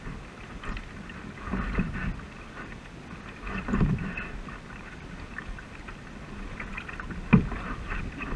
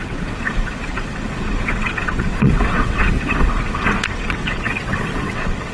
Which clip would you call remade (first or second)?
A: second